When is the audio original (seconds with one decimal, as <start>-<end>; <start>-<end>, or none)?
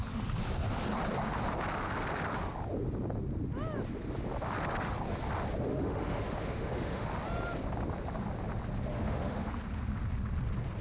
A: 0.0-5.7; 7.1-8.9; 9.5-10.8